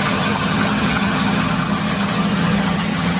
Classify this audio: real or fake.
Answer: fake